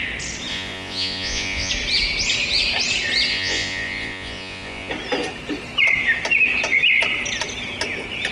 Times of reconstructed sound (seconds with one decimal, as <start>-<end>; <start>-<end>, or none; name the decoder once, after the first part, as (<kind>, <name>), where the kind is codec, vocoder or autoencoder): 0.5-1.7 (vocoder, Vocos); 3.3-4.9